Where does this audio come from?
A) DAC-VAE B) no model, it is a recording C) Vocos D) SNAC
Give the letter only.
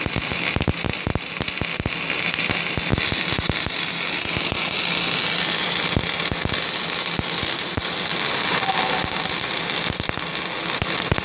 B